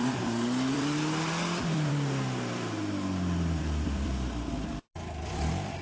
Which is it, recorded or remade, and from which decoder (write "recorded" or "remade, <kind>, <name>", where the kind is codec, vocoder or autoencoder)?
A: remade, vocoder, BigVGAN v2